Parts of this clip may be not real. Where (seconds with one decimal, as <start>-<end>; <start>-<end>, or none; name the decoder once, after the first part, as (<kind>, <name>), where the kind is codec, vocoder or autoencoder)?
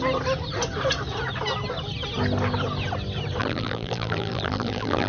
3.4-5.1 (vocoder, BigVGAN v2)